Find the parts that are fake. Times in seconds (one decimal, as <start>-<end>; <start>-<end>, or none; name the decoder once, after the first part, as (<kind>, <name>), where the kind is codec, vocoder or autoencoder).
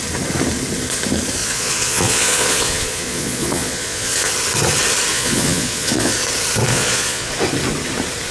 1.4-4.3 (vocoder, Vocos); 5.1-6.1; 6.7-7.3